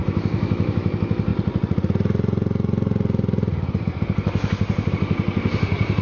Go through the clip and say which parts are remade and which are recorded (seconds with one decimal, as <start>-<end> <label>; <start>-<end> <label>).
0.0-0.9 remade; 0.9-6.0 recorded